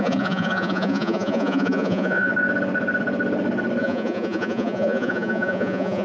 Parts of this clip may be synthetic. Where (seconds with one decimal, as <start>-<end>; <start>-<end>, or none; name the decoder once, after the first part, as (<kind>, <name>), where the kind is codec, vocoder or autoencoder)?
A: 0.0-2.3 (vocoder, Vocos); 3.8-6.0